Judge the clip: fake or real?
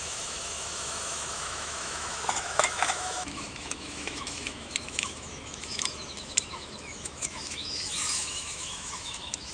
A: fake